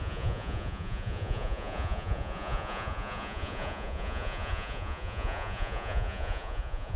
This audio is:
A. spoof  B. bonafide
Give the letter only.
A